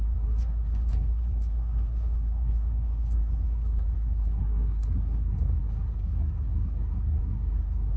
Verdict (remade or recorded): remade